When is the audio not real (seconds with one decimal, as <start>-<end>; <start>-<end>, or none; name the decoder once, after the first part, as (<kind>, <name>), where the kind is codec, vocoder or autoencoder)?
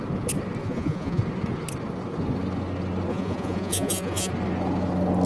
0.6-1.2 (vocoder, Vocos); 3.1-4.3